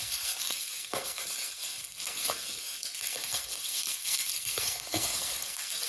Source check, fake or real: fake